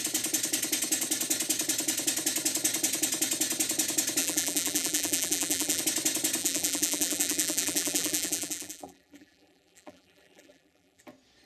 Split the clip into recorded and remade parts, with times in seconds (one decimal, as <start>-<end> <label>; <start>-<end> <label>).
0.0-4.2 recorded; 4.2-5.8 remade; 5.8-6.4 recorded; 6.4-11.0 remade; 11.0-11.5 recorded